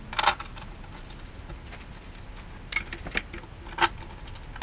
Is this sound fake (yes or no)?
no